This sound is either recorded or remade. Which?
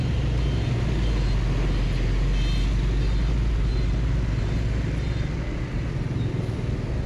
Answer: recorded